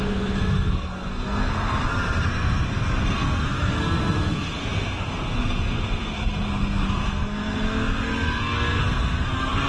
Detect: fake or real fake